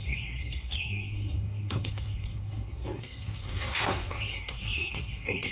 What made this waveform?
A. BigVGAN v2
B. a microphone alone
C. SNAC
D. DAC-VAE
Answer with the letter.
C